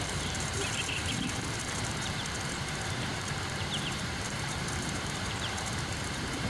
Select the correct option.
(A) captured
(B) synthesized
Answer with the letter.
B